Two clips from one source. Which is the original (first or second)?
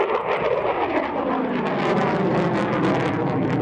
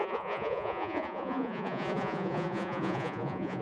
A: first